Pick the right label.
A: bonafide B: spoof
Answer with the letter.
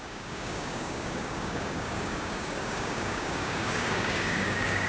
B